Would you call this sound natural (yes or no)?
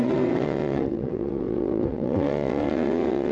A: no